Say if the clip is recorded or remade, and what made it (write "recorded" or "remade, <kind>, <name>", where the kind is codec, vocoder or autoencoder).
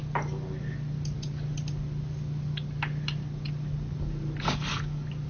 recorded